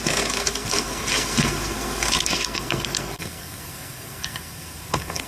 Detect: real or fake fake